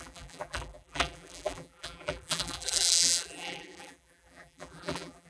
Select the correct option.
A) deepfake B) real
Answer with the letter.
A